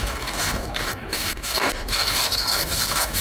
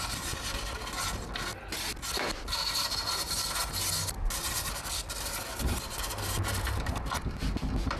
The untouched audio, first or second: second